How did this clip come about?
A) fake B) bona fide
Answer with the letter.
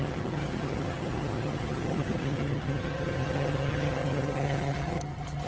A